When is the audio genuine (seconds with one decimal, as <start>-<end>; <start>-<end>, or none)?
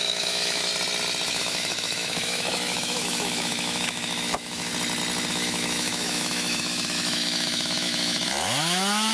0.7-1.3; 4.7-5.3